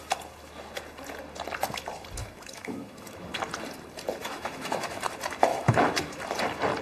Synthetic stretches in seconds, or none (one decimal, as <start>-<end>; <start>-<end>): 2.2-3.4; 4.2-5.0; 5.5-6.2